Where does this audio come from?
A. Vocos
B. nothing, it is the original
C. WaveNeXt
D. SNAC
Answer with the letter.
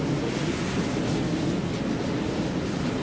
B